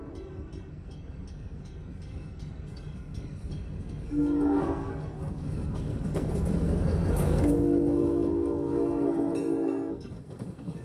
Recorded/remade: remade